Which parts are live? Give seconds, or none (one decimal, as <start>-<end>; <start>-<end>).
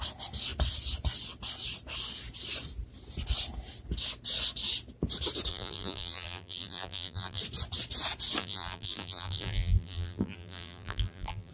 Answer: 0.0-5.5; 7.4-8.4